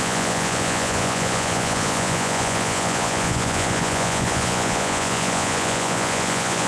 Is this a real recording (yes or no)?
no